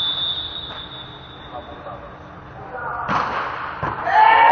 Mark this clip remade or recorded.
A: recorded